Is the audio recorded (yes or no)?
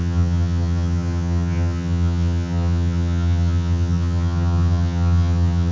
no